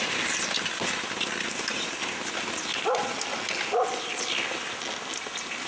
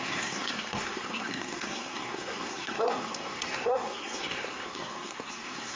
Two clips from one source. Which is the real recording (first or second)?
first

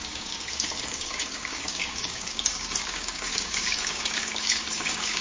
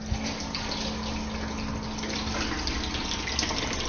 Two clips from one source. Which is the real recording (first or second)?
second